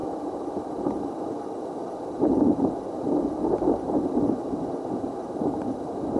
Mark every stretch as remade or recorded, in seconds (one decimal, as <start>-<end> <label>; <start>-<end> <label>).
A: 0.0-6.2 recorded